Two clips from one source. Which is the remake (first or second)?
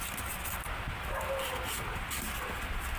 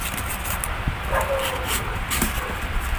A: second